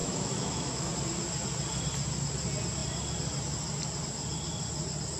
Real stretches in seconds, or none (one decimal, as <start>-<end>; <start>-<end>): 0.9-5.2